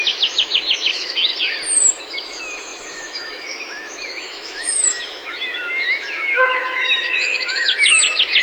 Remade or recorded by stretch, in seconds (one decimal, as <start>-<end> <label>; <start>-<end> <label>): 0.0-1.3 remade; 1.3-2.0 recorded; 2.0-8.4 remade

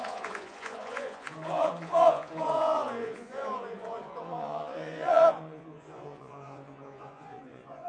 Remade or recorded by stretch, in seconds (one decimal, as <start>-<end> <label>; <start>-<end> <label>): 0.0-7.9 remade

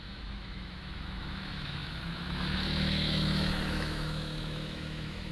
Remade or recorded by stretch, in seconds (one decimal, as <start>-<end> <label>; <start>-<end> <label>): 0.0-5.3 remade